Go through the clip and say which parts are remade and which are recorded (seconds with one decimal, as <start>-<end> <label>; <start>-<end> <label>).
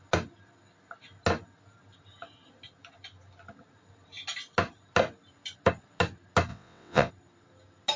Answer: 0.0-6.5 recorded; 6.5-7.1 remade; 7.1-8.0 recorded